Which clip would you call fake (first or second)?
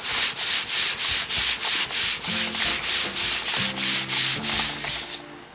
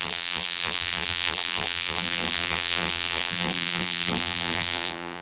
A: second